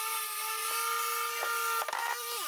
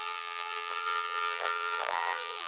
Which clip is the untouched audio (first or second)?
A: first